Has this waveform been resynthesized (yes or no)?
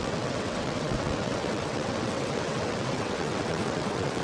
yes